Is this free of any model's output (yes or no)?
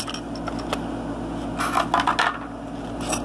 yes